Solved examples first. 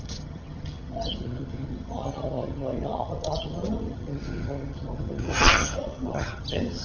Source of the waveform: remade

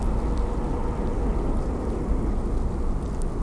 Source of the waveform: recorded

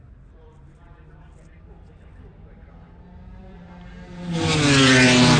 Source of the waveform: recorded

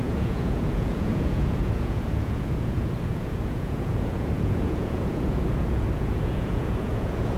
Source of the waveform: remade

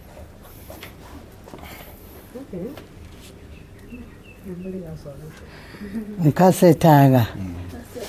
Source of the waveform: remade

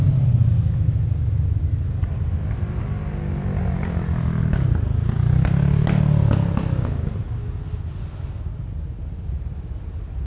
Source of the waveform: recorded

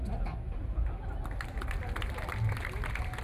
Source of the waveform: recorded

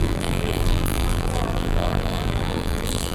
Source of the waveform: remade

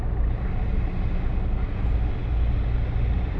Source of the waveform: recorded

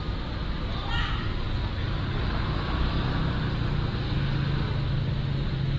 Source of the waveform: recorded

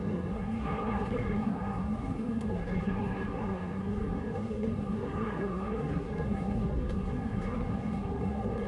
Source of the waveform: remade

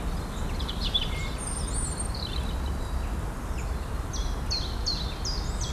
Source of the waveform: recorded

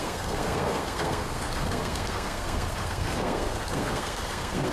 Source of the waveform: remade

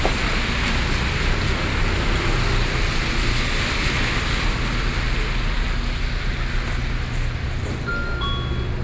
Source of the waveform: recorded